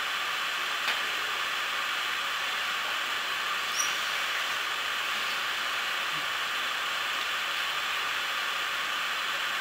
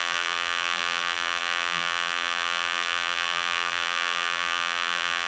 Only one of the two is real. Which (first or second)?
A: first